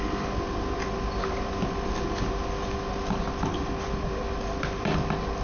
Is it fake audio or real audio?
real